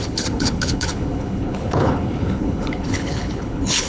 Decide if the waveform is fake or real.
fake